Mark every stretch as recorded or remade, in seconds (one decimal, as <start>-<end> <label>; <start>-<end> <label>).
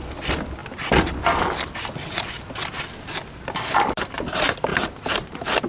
0.0-4.7 recorded; 4.7-5.7 remade